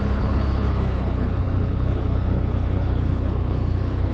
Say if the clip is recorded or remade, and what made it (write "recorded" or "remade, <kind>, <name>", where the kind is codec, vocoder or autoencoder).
remade, codec, HILCodec